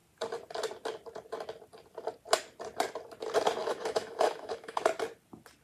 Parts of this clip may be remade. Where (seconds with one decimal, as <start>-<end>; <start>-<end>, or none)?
3.6-4.8